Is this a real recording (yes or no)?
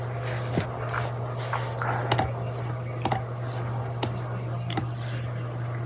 yes